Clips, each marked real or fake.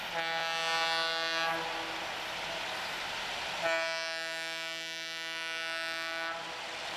real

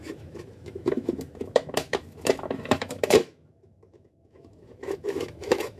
fake